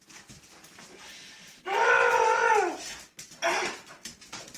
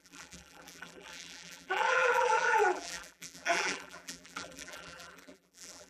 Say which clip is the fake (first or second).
second